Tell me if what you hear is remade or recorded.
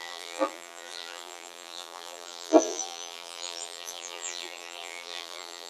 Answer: remade